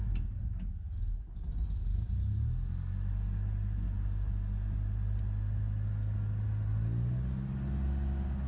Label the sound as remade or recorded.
recorded